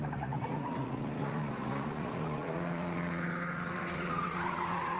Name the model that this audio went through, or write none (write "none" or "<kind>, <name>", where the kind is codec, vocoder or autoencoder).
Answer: vocoder, Vocos